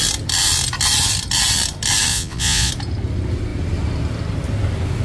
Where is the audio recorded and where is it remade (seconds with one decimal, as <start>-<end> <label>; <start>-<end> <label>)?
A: 0.0-2.1 recorded; 2.1-2.7 remade; 2.7-5.0 recorded